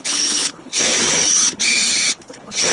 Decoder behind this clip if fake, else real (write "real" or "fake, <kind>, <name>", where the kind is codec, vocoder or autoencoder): fake, codec, HILCodec